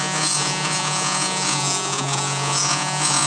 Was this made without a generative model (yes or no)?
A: no